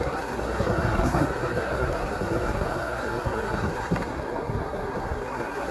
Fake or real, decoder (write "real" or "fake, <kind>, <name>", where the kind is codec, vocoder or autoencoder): fake, codec, SNAC